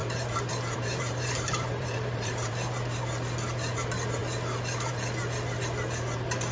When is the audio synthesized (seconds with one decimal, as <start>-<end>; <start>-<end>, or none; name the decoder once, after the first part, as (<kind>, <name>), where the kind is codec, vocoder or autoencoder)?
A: 0.0-3.0 (vocoder, BigVGAN v2)